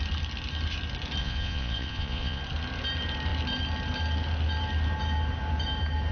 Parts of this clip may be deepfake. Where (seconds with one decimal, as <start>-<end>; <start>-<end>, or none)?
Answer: 1.2-2.4